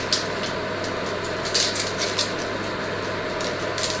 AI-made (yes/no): no